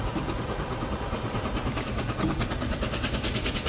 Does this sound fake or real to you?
real